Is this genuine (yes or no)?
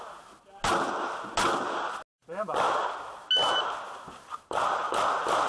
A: yes